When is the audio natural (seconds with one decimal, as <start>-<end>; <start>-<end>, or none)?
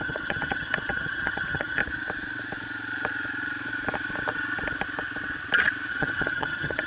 1.8-5.9